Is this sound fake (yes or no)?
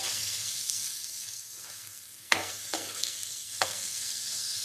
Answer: yes